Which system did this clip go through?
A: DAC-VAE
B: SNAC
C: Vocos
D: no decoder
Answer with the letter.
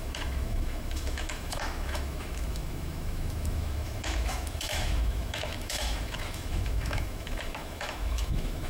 A